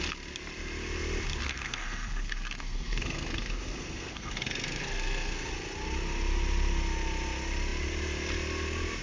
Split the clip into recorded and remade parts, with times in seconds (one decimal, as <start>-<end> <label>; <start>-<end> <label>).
0.0-1.4 recorded; 1.4-5.5 remade; 5.5-9.0 recorded